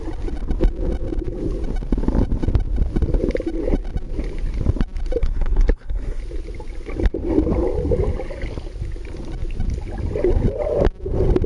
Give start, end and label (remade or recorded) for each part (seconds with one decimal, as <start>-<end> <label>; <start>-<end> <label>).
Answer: 0.0-5.2 recorded; 5.2-6.2 remade; 6.2-11.5 recorded